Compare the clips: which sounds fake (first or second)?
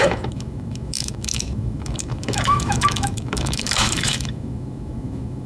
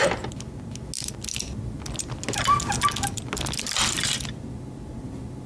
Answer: first